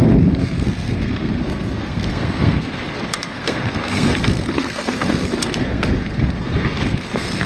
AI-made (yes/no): yes